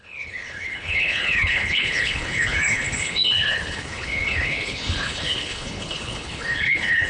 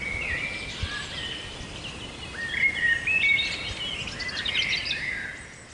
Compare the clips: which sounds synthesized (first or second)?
first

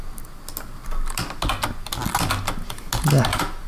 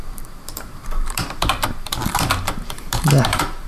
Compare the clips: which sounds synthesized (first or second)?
second